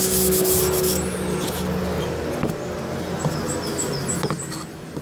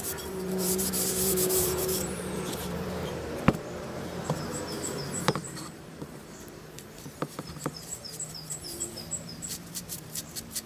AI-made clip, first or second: second